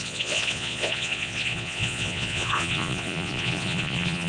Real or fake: fake